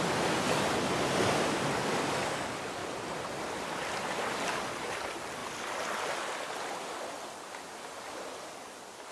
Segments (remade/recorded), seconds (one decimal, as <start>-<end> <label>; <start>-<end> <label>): 0.0-2.8 recorded; 2.8-4.0 remade; 4.0-9.1 recorded